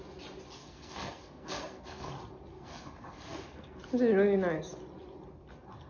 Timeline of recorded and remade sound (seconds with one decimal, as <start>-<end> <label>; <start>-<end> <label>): 0.0-0.6 recorded; 0.6-2.1 remade; 2.1-2.5 recorded; 2.5-3.8 remade; 3.8-5.9 recorded